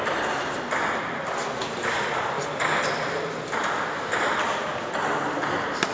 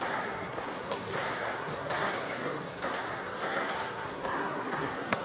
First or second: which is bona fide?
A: first